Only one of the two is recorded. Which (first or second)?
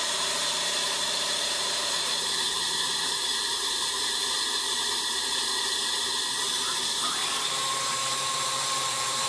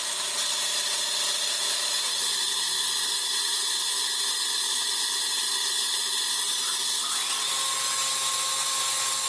second